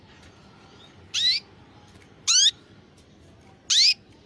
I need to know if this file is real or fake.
real